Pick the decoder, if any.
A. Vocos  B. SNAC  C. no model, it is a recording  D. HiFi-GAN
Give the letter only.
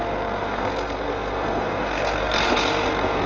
B